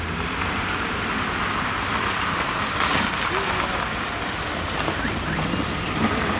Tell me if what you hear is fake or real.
real